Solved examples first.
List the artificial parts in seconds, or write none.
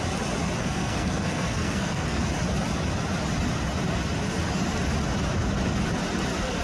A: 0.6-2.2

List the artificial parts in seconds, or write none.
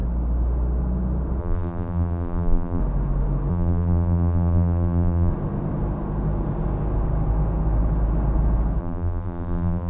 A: 1.4-2.8; 3.5-5.3; 8.8-9.9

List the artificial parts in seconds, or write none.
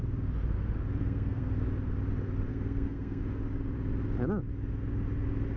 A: 1.0-1.5; 2.5-3.2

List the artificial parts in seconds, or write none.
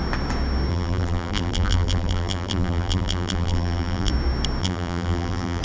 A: 0.7-4.1; 4.6-5.6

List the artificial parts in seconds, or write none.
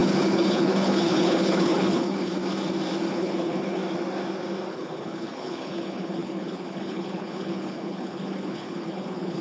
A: 0.0-2.4; 3.1-3.8; 4.7-9.4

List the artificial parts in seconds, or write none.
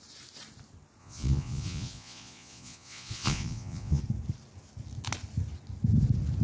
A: 1.0-4.0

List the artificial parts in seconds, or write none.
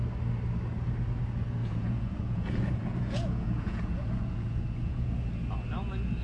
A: 1.6-5.3